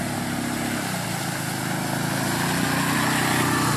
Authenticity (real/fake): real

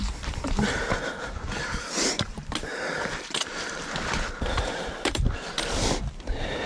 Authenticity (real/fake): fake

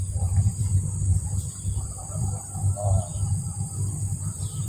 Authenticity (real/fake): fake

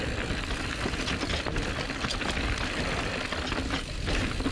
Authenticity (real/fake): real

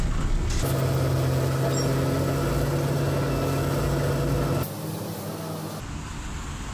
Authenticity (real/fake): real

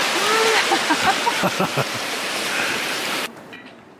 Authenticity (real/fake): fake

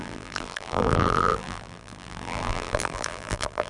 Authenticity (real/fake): fake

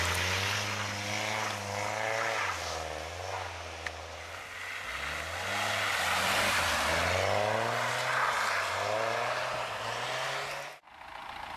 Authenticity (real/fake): real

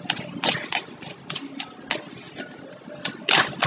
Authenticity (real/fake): real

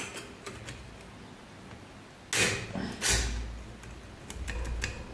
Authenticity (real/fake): real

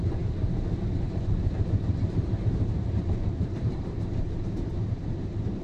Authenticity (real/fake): fake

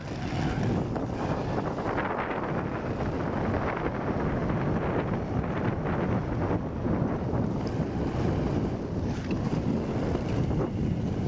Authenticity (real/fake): real